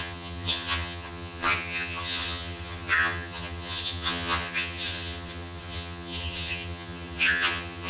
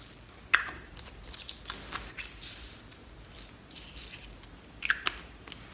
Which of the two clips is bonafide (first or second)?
second